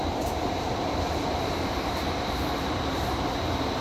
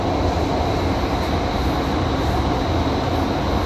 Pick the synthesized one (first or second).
first